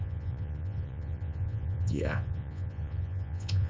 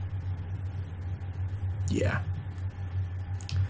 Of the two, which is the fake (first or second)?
first